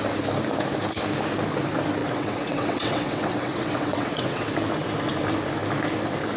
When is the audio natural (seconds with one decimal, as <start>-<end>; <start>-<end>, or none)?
0.0-2.0; 4.5-6.4